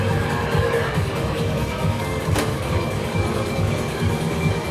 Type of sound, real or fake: fake